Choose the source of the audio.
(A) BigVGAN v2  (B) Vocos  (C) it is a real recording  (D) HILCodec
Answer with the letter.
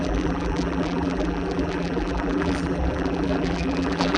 A